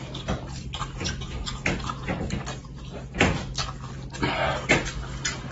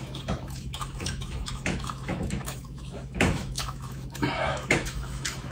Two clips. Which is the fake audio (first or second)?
second